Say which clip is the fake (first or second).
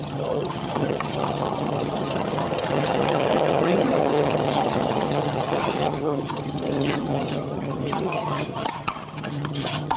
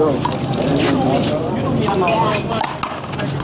first